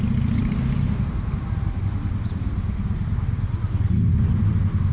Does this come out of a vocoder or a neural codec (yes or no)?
no